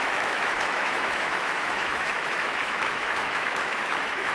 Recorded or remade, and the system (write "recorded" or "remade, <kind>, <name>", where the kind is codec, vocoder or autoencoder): remade, autoencoder, DAC-VAE